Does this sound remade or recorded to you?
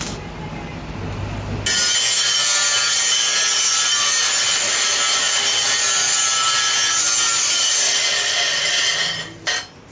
recorded